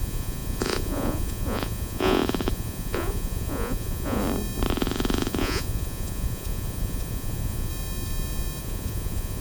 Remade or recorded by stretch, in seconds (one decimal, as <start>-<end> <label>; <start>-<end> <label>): 0.0-4.2 remade; 4.2-4.7 recorded; 4.7-7.7 remade; 7.7-8.6 recorded; 8.6-9.4 remade